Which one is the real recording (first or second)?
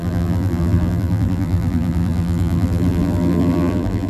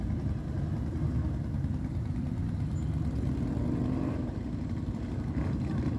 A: second